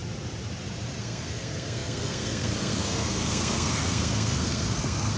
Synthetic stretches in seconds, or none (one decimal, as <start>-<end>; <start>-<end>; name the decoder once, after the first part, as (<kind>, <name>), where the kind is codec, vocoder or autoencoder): 1.0-5.2 (codec, SNAC)